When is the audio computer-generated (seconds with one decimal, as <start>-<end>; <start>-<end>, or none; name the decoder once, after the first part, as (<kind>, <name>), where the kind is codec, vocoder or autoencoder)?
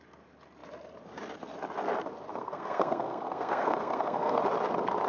2.3-4.4 (codec, SNAC)